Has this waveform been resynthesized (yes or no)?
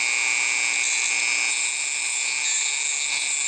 no